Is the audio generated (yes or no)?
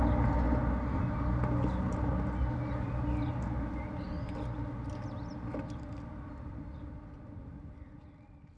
no